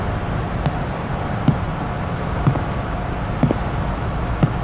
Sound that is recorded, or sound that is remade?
recorded